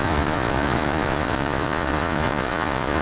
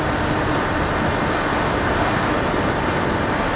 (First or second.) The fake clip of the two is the first